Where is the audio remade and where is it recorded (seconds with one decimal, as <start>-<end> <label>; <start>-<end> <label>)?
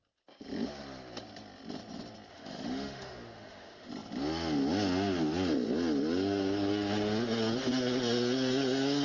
0.0-2.3 recorded; 2.3-3.9 remade; 3.9-9.0 recorded